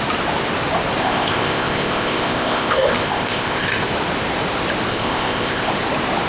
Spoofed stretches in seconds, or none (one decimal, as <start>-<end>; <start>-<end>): 1.0-3.9; 4.9-5.7